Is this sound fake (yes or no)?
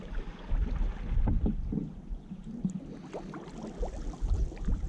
no